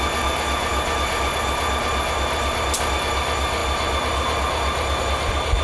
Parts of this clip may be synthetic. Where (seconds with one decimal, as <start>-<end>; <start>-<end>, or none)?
none